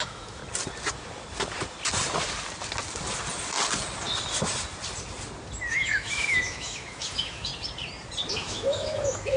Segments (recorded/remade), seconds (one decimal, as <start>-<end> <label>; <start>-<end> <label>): 0.0-0.4 remade; 0.4-5.7 recorded; 5.7-7.5 remade; 7.5-8.3 recorded; 8.3-9.4 remade